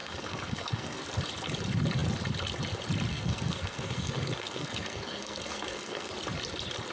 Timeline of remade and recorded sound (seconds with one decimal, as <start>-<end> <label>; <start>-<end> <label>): 0.0-1.0 remade; 1.0-3.1 recorded; 3.1-6.1 remade; 6.1-6.9 recorded